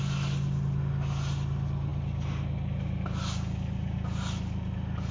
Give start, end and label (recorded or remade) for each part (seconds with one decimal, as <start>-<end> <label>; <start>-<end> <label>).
0.0-5.1 recorded